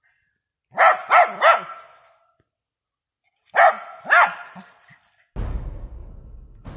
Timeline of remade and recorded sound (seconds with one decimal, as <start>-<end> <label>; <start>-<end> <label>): 0.0-5.5 recorded; 5.5-6.1 remade; 6.1-6.8 recorded